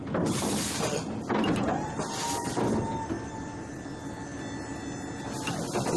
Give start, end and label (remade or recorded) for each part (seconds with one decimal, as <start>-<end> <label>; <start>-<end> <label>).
0.0-6.0 recorded